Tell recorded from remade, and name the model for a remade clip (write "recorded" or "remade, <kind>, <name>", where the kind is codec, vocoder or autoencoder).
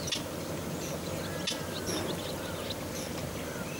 recorded